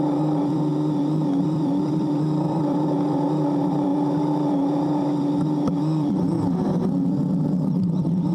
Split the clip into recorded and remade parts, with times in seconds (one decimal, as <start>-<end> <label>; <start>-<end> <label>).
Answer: 0.0-0.7 remade; 0.7-1.4 recorded; 1.4-8.3 remade